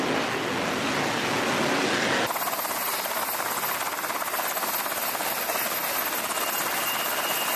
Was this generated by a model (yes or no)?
no